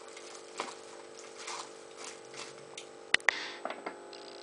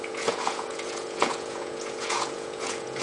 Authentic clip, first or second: first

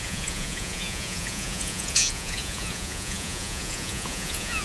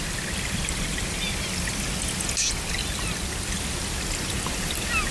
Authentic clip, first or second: second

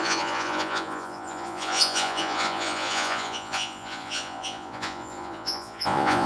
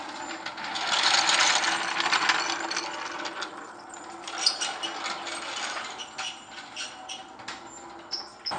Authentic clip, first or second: second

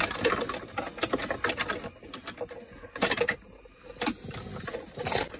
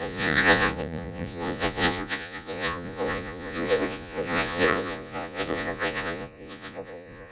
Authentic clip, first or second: first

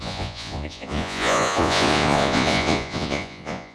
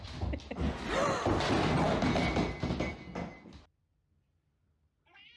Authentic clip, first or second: second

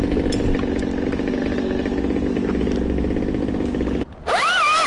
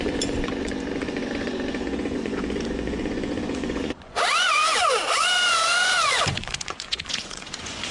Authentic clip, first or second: first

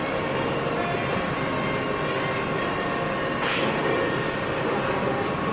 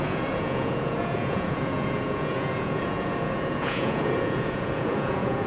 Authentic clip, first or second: first